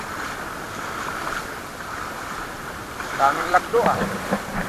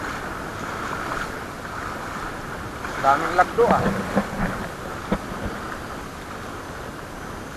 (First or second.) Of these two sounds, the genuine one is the second